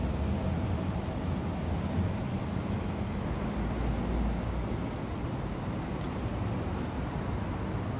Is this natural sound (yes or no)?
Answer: yes